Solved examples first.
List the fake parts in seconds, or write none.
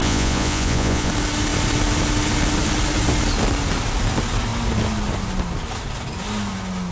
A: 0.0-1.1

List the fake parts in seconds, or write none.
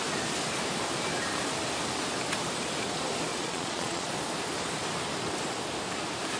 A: 3.3-4.1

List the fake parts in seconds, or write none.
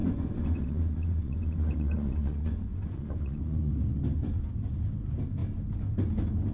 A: 0.0-3.7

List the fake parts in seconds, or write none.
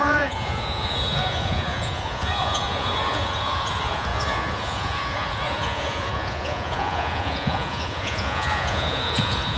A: 0.0-9.6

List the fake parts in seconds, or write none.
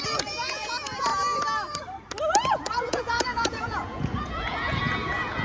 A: 0.0-1.1; 2.5-5.4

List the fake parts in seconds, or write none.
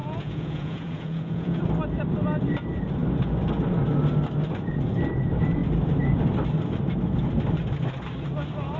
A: 0.0-1.6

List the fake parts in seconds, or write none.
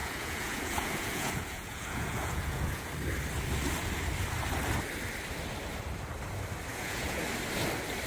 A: 0.0-2.9; 6.7-7.2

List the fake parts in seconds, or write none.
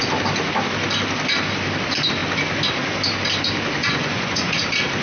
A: 3.8-4.6